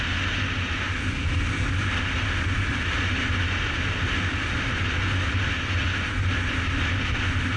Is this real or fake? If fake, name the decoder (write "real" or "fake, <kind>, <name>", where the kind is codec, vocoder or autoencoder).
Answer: real